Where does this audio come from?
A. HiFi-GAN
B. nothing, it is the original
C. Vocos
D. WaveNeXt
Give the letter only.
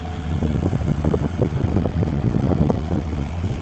D